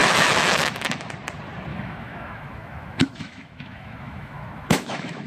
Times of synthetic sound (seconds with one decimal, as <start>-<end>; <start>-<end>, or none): 0.0-1.1; 1.7-5.3